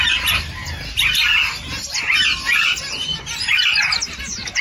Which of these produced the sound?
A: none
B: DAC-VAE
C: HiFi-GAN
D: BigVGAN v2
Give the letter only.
A